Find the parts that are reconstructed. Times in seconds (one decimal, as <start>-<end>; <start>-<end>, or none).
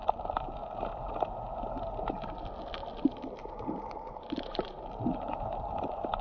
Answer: 0.0-0.6; 4.3-6.2